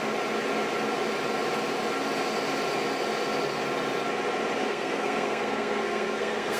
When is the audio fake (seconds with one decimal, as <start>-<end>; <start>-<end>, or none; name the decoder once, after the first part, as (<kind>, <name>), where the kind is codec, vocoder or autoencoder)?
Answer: 4.6-6.6 (codec, SNAC)